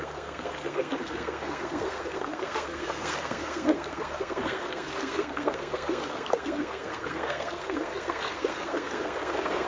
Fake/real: fake